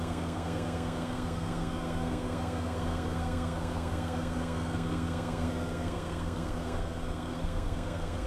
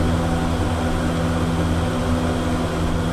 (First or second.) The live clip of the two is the second